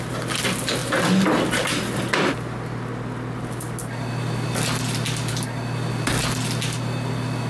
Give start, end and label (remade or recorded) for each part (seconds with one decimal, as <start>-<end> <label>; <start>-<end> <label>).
0.0-7.5 recorded